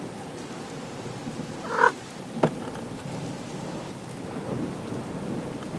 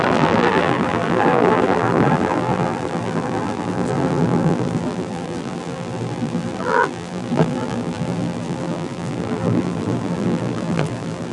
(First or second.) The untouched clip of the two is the first